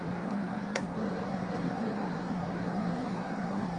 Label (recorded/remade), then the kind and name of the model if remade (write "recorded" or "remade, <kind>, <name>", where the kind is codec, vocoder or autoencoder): remade, codec, SNAC